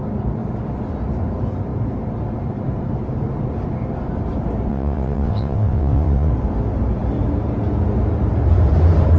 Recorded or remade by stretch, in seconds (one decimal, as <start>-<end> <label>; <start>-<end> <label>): 0.0-4.7 recorded; 4.7-6.3 remade; 6.3-9.2 recorded